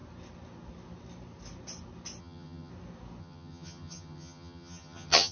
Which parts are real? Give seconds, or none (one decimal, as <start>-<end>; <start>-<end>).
0.0-2.2; 2.7-3.2